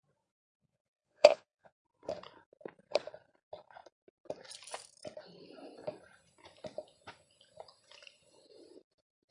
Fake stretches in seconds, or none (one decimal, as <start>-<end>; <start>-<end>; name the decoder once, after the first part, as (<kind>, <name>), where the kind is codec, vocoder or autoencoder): 0.4-1.8 (vocoder, Vocos)